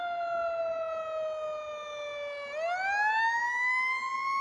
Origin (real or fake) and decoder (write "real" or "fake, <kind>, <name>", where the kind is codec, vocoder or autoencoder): real